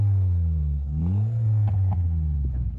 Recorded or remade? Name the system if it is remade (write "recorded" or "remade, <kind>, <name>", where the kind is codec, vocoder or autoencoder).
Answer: recorded